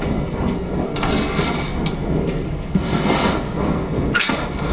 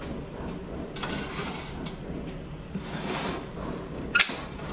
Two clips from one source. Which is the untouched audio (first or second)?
second